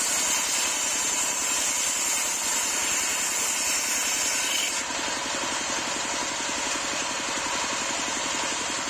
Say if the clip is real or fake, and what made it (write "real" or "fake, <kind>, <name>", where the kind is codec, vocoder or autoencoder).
real